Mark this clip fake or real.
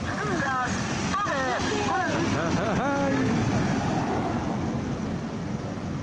real